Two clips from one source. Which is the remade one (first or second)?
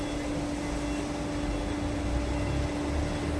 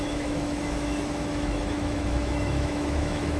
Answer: second